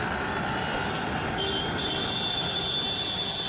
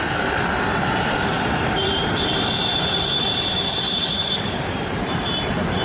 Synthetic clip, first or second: second